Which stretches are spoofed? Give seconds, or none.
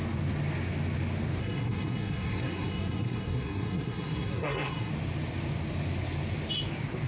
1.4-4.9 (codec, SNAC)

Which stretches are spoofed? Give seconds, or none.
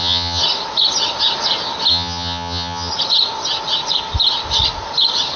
0.0-0.4 (vocoder, HiFi-GAN); 1.9-2.9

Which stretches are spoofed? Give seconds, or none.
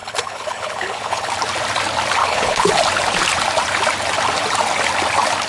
0.0-1.3 (codec, HILCodec); 2.2-2.7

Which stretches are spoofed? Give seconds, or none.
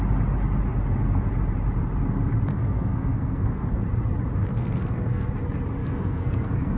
2.5-3.8 (codec, SNAC); 4.5-5.3; 5.8-6.8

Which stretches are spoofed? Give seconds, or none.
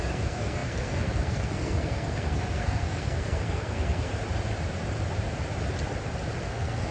0.0-4.1 (codec, SNAC); 6.4-6.9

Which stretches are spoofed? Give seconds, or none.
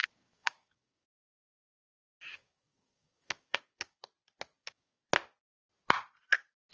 0.0-4.0 (codec, DAC); 4.6-5.1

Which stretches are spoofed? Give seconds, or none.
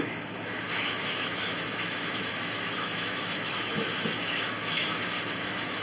0.0-5.8 (autoencoder, DAC-VAE)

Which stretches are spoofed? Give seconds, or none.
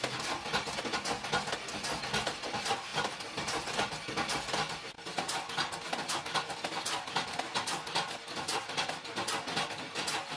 8.5-9.3 (vocoder, BigVGAN v2)